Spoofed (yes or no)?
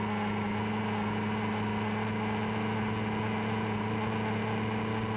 no